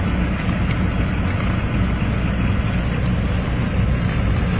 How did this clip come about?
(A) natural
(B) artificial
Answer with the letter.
A